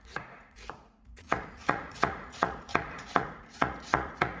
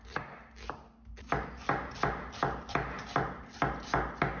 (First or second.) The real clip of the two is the second